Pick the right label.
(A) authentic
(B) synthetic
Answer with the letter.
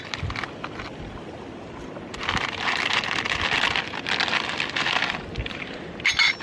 A